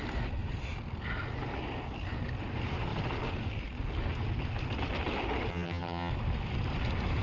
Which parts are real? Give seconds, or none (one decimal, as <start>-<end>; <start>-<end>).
0.0-5.5; 6.1-7.2